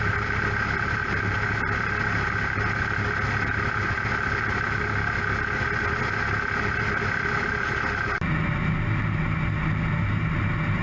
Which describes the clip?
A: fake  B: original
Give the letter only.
B